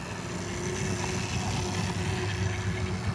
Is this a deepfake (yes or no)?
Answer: no